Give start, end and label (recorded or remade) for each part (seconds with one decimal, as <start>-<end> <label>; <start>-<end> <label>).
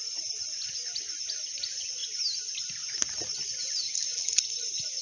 0.0-5.0 recorded